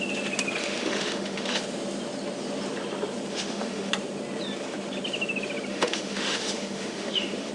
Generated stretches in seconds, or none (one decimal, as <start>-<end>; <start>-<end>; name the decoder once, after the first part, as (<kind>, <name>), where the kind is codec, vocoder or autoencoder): 0.6-1.6 (autoencoder, DAC-VAE); 3.3-3.9; 5.7-7.5